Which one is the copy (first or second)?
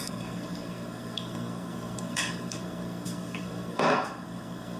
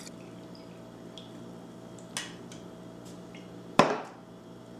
first